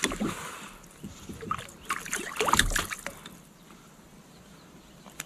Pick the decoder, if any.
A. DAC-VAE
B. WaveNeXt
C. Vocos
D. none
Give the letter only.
D